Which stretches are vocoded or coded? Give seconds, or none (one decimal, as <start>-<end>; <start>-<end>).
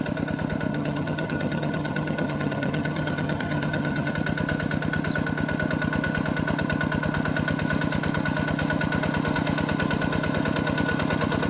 0.7-4.1